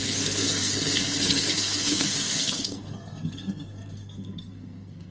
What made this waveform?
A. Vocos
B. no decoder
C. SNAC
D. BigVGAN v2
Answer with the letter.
C